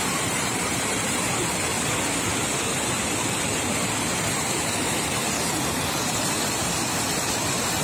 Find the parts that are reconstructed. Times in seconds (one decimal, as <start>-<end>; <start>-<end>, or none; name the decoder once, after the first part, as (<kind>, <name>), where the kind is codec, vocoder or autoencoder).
0.0-1.7 (vocoder, BigVGAN v2); 5.7-7.8